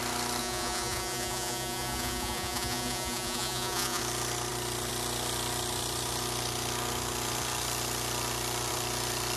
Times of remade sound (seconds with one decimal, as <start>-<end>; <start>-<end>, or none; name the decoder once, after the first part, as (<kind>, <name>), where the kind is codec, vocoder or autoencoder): 0.4-4.0 (vocoder, Vocos)

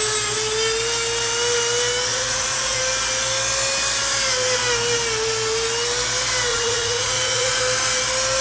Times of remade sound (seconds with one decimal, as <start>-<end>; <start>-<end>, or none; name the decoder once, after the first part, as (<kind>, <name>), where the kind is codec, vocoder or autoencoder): 2.1-2.8 (vocoder, Vocos); 6.5-7.6

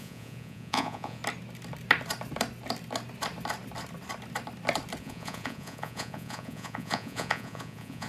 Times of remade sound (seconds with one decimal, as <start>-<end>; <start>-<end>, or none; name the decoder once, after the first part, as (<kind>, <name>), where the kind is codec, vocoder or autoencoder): 0.0-1.2 (vocoder, Vocos); 5.0-8.1

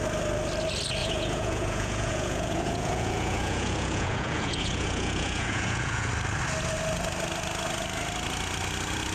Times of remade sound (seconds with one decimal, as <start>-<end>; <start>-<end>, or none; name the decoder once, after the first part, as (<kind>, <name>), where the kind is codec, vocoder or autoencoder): 1.0-6.1 (vocoder, Vocos)

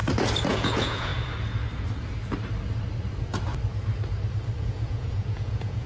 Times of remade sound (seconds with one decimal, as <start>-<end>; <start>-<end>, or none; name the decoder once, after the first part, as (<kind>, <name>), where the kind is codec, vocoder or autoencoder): 0.5-1.1 (vocoder, Vocos); 4.6-5.9

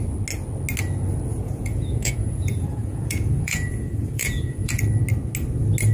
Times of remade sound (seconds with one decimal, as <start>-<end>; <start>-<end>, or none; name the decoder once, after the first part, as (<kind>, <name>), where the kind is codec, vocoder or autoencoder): 1.3-4.8 (vocoder, Vocos)

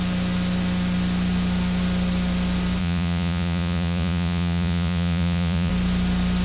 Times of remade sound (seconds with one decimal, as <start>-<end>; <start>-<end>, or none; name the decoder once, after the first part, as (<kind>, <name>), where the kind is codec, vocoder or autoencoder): 2.8-5.7 (vocoder, Vocos)

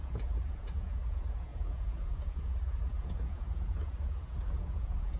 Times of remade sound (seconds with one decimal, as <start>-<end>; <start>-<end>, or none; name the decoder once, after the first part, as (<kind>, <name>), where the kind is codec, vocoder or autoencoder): 0.0-5.2 (vocoder, Vocos)